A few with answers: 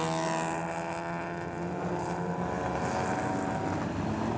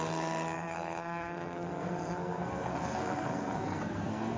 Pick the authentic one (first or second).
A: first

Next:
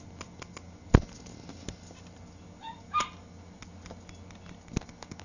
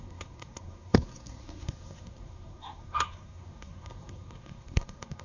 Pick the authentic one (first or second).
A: first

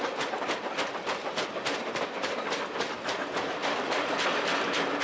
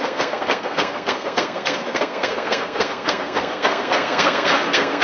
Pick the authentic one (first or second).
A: first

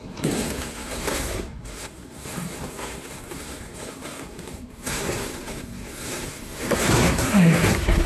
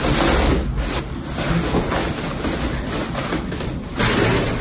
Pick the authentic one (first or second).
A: second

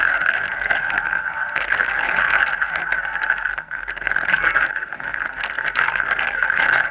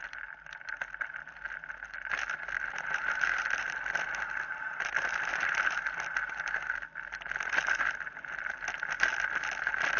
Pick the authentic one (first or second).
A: second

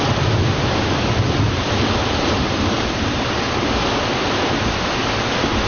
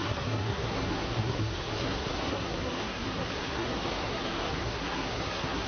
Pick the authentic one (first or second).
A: first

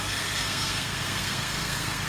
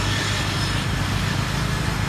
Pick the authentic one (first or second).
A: second